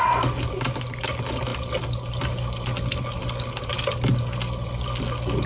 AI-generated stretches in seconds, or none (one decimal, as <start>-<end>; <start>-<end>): none